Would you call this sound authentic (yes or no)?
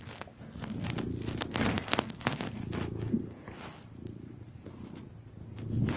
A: yes